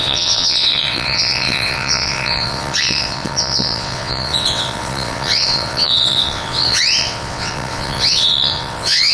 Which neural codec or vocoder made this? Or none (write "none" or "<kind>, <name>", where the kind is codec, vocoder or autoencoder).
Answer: vocoder, WaveNeXt